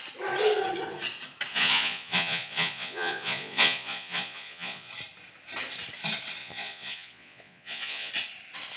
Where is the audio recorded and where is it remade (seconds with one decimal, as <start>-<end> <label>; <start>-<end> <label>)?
0.0-1.5 recorded; 1.5-4.9 remade; 4.9-6.4 recorded; 6.4-8.1 remade; 8.1-8.8 recorded